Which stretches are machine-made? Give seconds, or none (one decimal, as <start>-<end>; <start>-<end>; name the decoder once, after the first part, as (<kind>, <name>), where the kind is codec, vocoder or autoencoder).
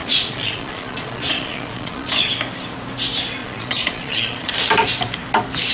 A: 0.0-2.3 (vocoder, Vocos); 3.4-4.5